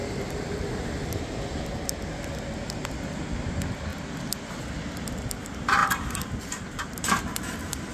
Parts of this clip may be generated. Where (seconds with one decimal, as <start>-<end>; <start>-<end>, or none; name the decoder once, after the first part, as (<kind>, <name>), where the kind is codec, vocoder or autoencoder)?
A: 0.0-1.1 (vocoder, BigVGAN v2); 5.8-7.2